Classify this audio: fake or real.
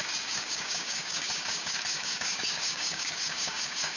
fake